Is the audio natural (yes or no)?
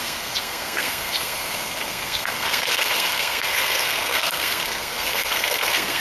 no